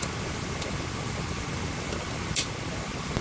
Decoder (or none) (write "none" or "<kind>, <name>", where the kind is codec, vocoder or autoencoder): none